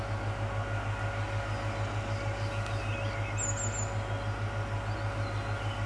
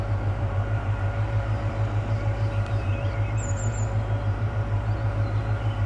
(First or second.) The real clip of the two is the first